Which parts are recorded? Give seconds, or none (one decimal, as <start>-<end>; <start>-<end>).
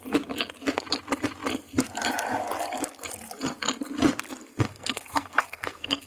0.0-4.5